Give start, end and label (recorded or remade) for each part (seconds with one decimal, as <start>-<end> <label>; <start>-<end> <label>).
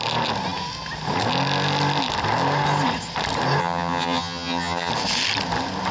0.0-3.6 recorded; 3.6-4.9 remade; 4.9-5.9 recorded